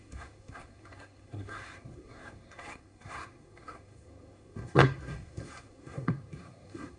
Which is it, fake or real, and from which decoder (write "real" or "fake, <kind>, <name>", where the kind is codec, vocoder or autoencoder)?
fake, codec, SNAC